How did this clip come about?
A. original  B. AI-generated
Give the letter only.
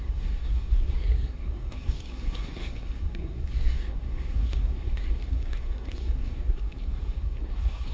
B